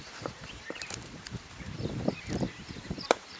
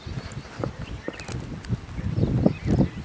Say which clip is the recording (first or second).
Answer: second